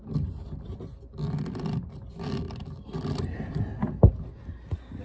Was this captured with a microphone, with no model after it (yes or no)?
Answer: yes